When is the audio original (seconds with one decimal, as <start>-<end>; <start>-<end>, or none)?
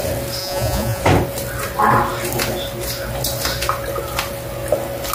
0.0-0.4; 1.0-5.1